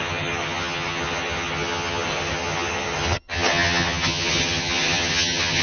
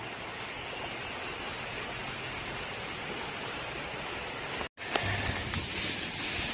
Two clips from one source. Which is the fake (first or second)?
first